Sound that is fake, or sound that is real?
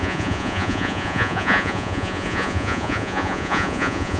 fake